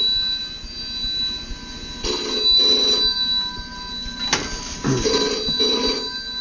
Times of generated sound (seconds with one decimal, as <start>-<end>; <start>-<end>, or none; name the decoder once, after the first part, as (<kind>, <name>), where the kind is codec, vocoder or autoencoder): none